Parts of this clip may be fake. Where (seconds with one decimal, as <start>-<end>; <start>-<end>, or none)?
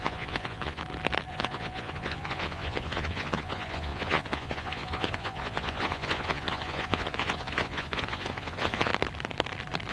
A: 0.0-0.8; 1.3-8.9